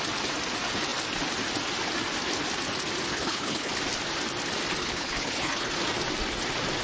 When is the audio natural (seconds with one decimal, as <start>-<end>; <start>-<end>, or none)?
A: 0.0-3.1; 3.7-4.8; 5.7-6.8